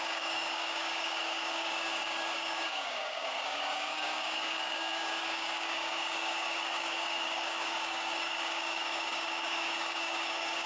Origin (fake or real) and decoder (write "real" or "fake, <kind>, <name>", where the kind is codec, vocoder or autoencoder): fake, codec, DAC